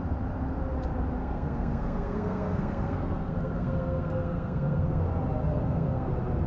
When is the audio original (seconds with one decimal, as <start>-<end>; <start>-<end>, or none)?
0.0-1.2; 5.0-5.5; 6.1-6.5